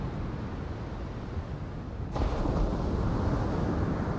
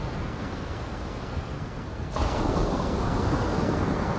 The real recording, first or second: first